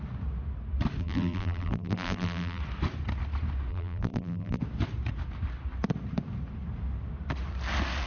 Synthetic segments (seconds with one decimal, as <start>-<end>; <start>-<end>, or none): 1.0-2.6; 3.7-4.6